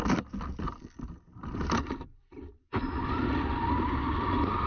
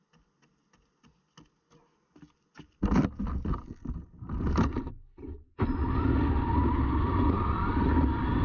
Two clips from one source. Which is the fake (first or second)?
first